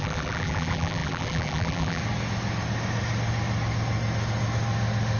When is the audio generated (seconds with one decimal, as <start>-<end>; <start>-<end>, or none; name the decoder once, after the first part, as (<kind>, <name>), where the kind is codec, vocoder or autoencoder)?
0.0-2.0 (vocoder, BigVGAN v2)